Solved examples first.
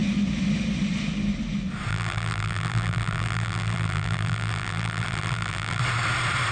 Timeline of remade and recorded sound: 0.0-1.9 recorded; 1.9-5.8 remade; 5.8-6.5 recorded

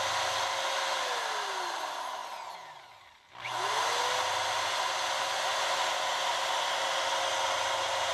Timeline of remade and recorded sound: 0.0-8.1 recorded

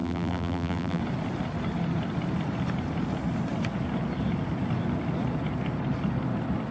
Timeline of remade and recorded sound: 0.0-1.0 remade; 1.0-6.7 recorded